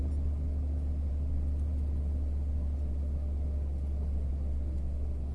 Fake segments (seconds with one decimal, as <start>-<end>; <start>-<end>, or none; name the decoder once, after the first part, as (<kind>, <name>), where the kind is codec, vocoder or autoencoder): none